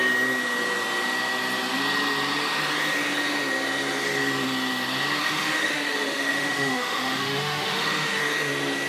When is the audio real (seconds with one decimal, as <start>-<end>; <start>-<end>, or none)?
0.0-5.2; 8.2-8.9